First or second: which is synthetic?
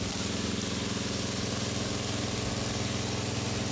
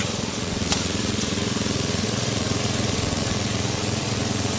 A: second